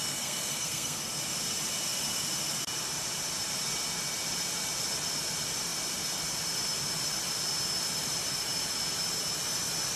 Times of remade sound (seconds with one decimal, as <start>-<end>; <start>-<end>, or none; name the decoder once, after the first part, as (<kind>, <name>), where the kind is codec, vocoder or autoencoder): 0.0-1.0 (codec, SNAC)